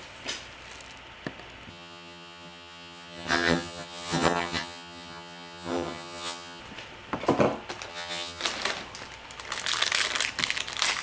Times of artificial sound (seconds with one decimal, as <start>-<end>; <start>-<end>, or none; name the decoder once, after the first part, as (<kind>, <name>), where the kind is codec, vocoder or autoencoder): 1.7-6.6 (vocoder, HiFi-GAN); 7.9-8.4